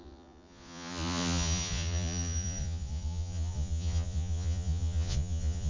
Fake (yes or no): yes